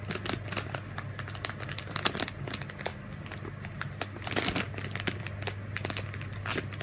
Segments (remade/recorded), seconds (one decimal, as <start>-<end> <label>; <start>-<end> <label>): 0.0-6.8 recorded